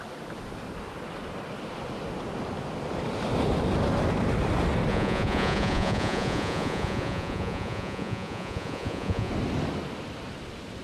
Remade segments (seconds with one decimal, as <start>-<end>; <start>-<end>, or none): 4.9-9.3